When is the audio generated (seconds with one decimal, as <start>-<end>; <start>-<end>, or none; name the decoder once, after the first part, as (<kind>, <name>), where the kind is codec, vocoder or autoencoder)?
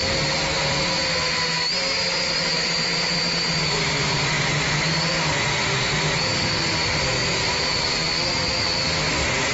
2.1-3.1 (vocoder, BigVGAN v2); 7.2-8.8